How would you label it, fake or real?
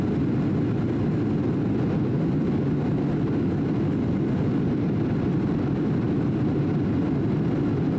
real